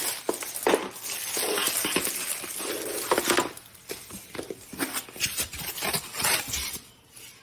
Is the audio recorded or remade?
recorded